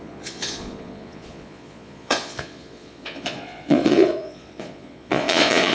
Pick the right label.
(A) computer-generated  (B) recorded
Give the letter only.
A